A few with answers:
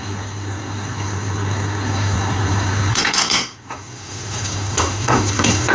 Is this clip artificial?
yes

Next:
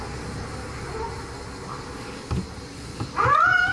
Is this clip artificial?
no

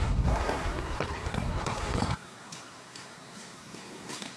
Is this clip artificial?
yes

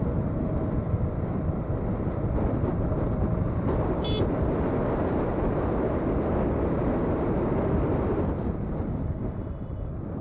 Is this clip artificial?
no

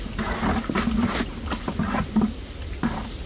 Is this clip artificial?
no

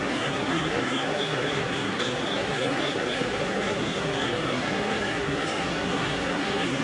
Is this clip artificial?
yes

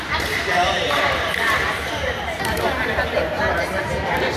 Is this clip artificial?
no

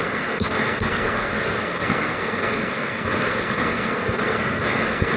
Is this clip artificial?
yes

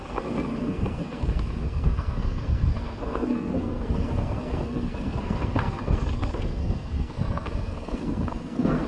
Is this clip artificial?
yes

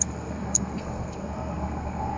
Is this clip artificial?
yes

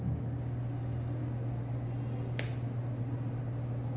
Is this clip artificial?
no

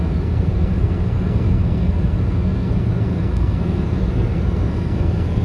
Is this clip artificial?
yes